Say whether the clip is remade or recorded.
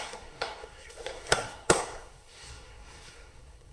remade